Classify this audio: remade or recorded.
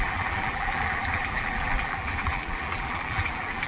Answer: remade